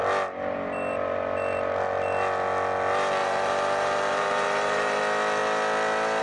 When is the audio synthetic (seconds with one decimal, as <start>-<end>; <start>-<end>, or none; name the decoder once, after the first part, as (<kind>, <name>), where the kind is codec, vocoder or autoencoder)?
3.2-5.0 (vocoder, BigVGAN v2)